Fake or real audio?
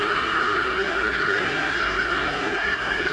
fake